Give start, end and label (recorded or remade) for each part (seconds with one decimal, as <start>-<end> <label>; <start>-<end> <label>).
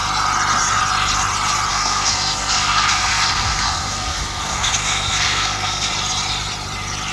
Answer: 0.0-1.7 recorded; 1.7-5.9 remade; 5.9-7.1 recorded